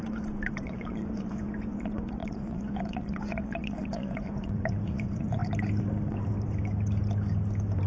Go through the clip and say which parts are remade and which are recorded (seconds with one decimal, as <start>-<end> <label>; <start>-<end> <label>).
0.0-5.4 remade; 5.4-7.9 recorded